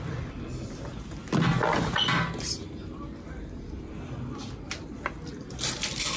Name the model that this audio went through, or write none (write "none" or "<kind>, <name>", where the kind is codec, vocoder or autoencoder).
none